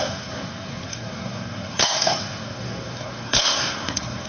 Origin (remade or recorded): remade